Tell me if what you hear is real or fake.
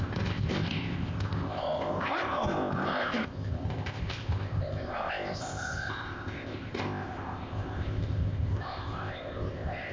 fake